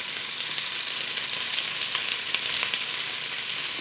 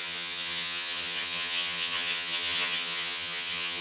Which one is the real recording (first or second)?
first